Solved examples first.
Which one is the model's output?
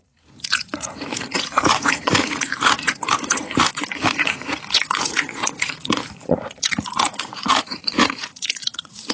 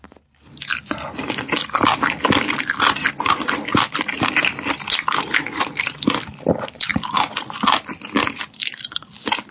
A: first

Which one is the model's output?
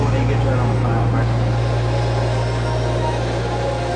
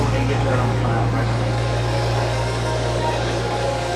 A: second